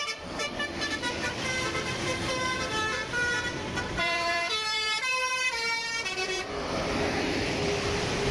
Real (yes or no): no